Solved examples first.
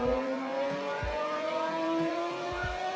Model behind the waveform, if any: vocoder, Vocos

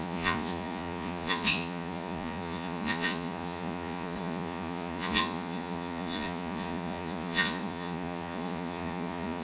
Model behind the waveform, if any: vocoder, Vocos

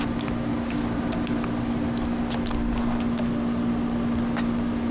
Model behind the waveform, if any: none